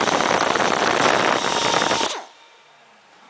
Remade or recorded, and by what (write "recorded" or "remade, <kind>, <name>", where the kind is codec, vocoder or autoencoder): recorded